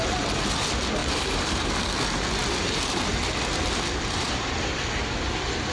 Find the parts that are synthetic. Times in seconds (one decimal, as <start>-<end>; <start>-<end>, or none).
1.0-1.8